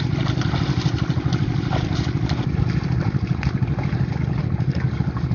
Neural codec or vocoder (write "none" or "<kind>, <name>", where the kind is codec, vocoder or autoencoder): none